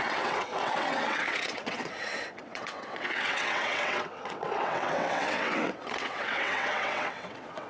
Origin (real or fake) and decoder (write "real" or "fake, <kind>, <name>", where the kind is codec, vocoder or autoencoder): fake, vocoder, WaveNeXt